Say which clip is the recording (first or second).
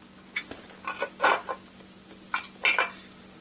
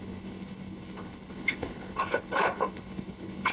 first